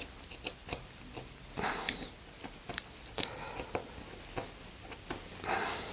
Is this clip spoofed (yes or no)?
no